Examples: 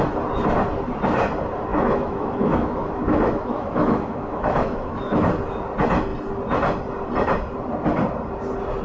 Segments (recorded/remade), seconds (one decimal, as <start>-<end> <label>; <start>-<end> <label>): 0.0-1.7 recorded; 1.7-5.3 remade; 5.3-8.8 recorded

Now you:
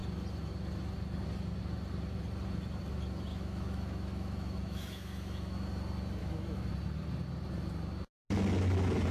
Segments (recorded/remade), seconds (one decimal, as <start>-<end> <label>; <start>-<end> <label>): 0.0-3.3 recorded; 3.3-5.7 remade; 5.7-6.2 recorded; 6.2-6.7 remade; 6.7-9.1 recorded

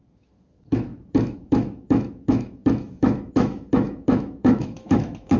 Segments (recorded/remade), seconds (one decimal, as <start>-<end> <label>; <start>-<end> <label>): 0.0-5.4 remade

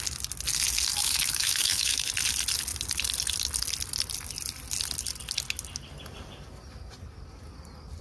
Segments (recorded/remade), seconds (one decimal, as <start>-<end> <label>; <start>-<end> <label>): 0.0-1.0 recorded; 1.0-2.1 remade; 2.1-8.0 recorded